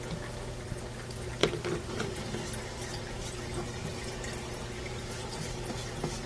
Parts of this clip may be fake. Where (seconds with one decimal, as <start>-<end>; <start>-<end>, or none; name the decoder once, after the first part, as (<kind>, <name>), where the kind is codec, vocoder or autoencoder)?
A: none